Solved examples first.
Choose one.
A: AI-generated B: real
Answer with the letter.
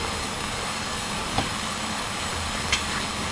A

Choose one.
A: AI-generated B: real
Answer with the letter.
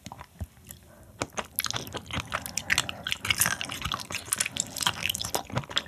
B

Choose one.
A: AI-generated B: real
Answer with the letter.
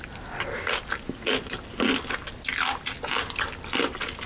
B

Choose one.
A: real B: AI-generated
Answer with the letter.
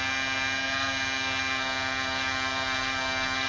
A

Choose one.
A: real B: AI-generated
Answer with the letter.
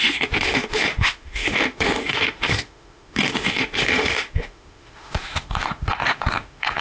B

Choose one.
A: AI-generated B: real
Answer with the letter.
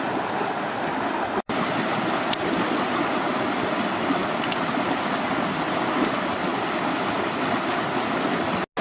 B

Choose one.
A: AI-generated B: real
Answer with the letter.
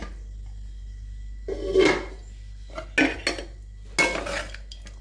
B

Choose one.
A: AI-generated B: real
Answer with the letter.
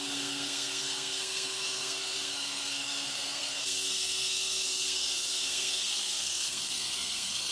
A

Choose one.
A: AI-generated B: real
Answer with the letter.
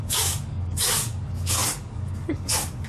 A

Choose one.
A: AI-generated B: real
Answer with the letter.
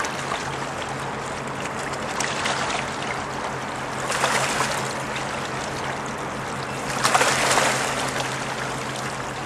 B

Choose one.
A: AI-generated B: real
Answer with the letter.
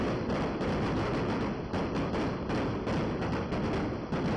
B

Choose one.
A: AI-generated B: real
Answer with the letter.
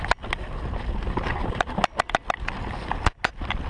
B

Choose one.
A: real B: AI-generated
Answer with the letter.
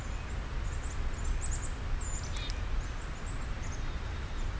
A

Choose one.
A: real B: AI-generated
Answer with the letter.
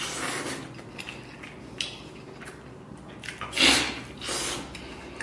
A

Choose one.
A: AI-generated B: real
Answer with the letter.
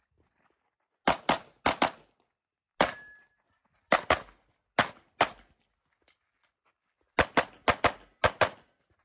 B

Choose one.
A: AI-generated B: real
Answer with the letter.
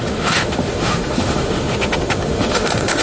A